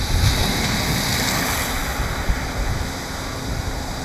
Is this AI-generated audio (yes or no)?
no